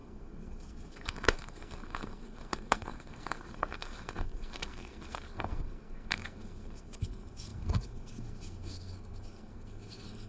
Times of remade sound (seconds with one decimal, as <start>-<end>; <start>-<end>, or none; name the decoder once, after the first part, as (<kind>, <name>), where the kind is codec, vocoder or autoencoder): 0.0-10.3 (codec, SNAC)